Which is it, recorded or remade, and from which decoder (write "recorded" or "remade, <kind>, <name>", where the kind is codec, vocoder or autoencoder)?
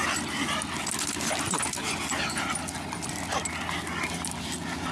recorded